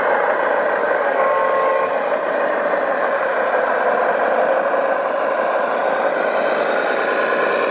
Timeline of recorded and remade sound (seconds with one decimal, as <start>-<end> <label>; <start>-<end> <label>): 0.0-0.8 recorded; 0.8-1.9 remade; 1.9-7.7 recorded